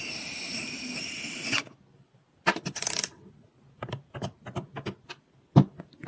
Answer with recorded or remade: recorded